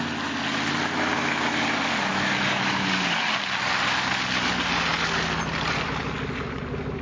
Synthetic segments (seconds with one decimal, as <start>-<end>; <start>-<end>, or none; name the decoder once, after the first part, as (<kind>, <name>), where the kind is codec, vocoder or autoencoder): 2.1-3.4 (codec, DAC)